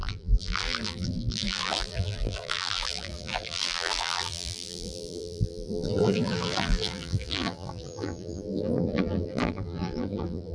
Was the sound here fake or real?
fake